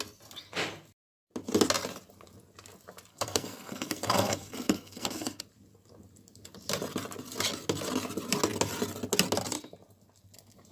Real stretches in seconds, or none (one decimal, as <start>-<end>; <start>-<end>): 0.0-3.1; 5.4-10.7